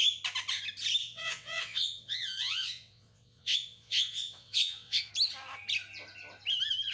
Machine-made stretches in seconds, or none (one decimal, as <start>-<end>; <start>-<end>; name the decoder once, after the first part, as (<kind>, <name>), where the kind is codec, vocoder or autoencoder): 1.0-5.1 (vocoder, WaveNeXt)